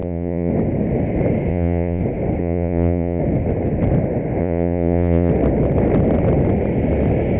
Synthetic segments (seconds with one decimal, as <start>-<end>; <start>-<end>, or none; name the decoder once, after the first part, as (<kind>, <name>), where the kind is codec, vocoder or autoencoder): 0.0-0.5 (vocoder, Vocos); 1.5-2.0; 2.4-3.2; 4.4-5.3